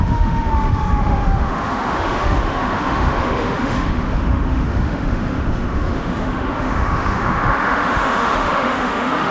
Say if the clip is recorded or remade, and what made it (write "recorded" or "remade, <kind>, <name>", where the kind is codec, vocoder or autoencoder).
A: remade, autoencoder, DAC-VAE